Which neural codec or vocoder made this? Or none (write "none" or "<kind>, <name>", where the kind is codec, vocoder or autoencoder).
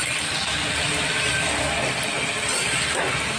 none